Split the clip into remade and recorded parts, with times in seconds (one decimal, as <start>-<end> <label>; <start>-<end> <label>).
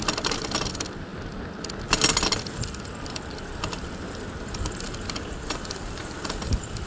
0.0-1.1 remade; 1.1-5.2 recorded; 5.2-6.9 remade